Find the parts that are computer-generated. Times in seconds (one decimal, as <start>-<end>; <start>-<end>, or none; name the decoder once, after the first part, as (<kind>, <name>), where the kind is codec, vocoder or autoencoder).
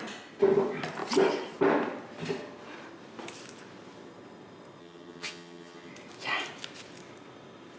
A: 4.8-5.9 (vocoder, HiFi-GAN)